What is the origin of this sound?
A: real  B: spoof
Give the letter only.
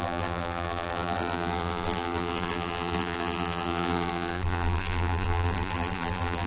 B